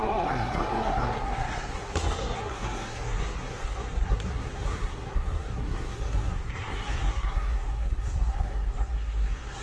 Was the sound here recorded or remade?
remade